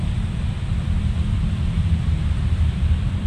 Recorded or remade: remade